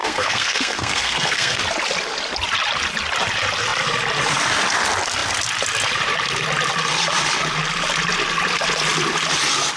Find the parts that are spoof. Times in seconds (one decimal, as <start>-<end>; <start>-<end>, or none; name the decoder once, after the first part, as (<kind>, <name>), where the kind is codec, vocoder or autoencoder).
0.0-1.6 (codec, SNAC)